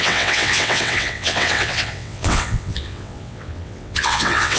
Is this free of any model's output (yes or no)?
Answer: no